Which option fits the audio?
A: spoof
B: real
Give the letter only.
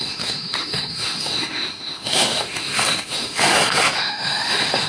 A